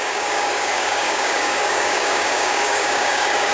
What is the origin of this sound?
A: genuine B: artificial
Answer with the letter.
B